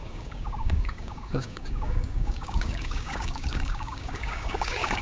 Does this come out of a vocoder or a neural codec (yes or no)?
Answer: yes